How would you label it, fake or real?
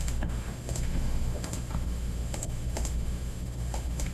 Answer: fake